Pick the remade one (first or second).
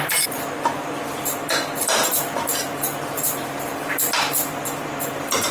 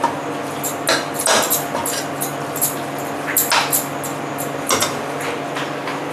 first